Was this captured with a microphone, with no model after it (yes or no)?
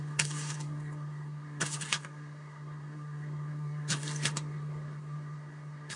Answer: no